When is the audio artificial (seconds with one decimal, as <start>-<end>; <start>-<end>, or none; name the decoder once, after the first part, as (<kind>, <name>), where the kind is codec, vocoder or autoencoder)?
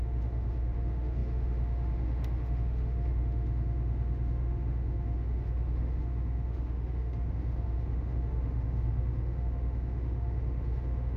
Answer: 0.0-11.2 (autoencoder, DAC-VAE)